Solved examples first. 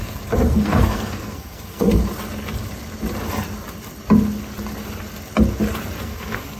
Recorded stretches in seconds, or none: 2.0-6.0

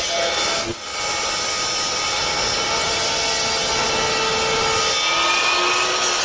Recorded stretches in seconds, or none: 0.0-6.2